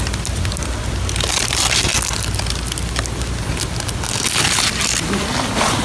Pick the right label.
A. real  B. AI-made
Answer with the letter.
A